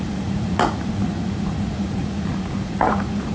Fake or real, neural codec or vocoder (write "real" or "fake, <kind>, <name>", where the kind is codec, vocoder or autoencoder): fake, vocoder, Vocos